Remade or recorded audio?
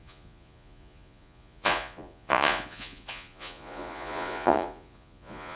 remade